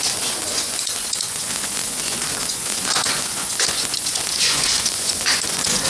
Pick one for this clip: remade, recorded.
remade